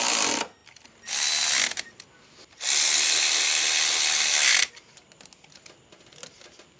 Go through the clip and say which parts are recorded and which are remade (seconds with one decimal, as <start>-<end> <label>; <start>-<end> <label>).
0.0-6.8 recorded